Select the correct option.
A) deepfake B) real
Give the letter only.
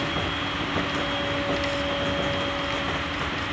B